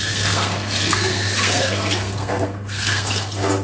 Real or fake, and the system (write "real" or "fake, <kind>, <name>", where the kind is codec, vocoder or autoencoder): fake, codec, SNAC